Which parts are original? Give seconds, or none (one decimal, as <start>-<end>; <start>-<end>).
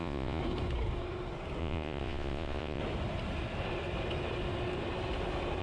0.4-1.6; 2.8-5.6